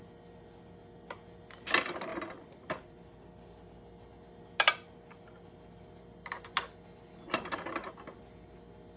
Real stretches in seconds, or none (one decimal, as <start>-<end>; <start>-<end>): 0.0-9.0